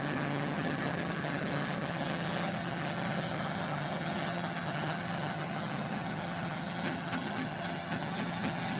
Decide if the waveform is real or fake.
fake